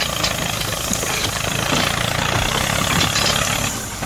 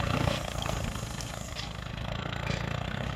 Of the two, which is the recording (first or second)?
first